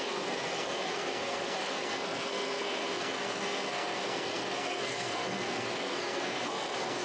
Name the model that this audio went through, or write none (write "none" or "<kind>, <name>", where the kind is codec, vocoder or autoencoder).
codec, SNAC